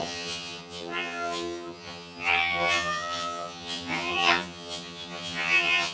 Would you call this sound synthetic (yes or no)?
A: yes